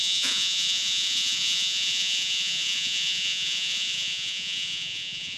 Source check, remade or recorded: remade